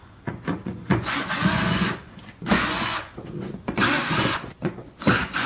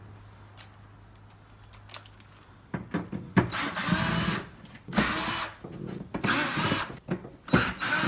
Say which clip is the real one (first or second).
second